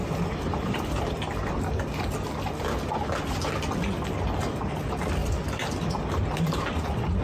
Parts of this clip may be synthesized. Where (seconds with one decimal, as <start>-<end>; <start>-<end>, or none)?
0.0-1.6